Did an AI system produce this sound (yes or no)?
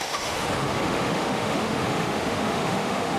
yes